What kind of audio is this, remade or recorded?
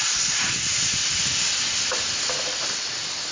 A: recorded